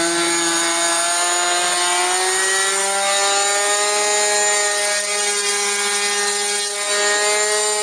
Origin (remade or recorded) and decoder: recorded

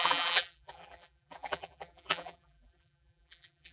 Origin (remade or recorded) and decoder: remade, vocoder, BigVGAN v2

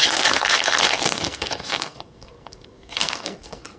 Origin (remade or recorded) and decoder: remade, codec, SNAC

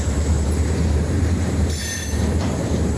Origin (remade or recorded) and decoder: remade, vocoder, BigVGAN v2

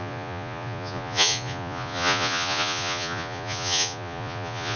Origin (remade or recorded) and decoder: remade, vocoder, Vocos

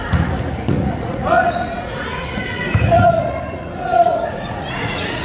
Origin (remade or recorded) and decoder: remade, vocoder, Vocos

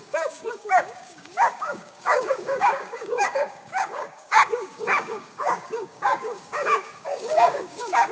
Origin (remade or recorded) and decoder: remade, codec, DAC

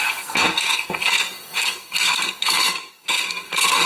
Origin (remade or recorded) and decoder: remade, codec, SNAC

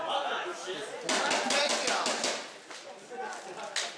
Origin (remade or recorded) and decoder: recorded